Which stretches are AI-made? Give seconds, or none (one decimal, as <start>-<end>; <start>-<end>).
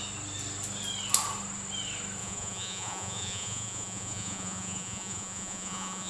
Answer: 2.2-6.1